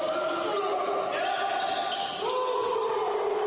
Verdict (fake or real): real